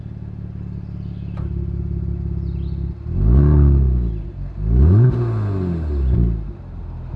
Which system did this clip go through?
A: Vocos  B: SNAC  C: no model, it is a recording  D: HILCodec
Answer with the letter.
C